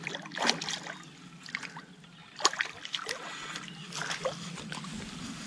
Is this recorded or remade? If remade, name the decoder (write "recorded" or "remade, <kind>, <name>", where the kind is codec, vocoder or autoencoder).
recorded